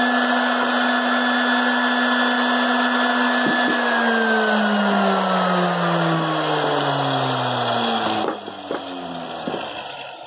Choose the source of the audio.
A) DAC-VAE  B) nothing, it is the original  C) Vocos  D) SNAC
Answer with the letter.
B